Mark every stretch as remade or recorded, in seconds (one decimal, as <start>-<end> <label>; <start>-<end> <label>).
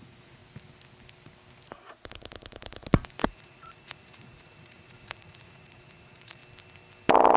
0.0-0.4 remade; 0.4-3.2 recorded; 3.2-6.4 remade; 6.4-7.4 recorded